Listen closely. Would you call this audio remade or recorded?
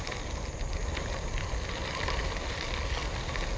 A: recorded